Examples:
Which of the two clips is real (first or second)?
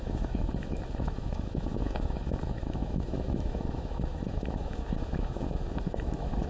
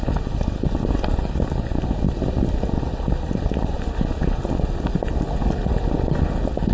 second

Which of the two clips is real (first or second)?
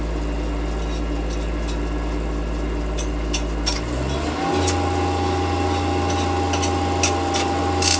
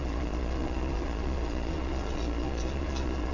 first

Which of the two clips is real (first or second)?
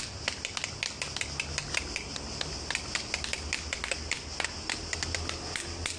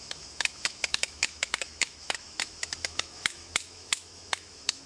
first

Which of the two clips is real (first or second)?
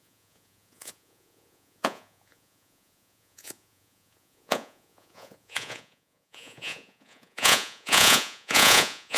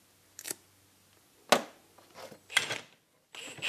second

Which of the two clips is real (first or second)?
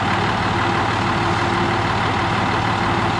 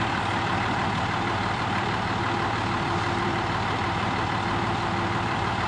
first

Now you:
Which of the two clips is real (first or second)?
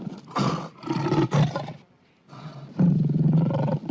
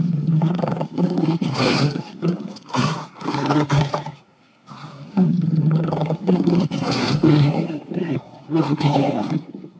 first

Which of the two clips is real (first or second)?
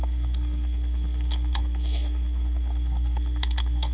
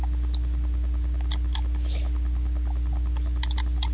second